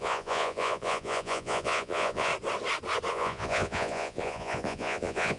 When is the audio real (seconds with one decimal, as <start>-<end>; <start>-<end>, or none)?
2.3-3.1